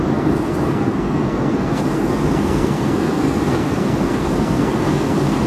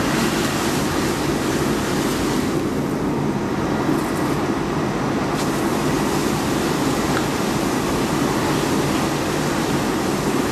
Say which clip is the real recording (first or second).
second